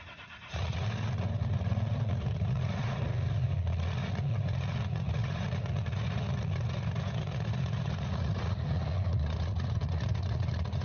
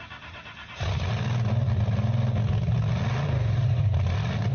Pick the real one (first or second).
second